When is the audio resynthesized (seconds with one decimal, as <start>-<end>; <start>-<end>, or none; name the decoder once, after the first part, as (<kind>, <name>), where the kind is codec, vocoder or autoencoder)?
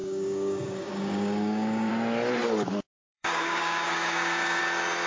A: 0.0-1.9 (codec, DAC); 3.1-4.6